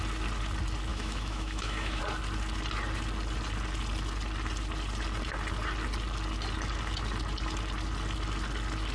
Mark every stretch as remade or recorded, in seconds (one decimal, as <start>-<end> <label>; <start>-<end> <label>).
0.0-0.9 recorded; 0.9-2.0 remade; 2.0-8.9 recorded